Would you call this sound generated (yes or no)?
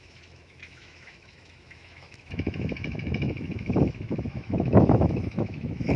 yes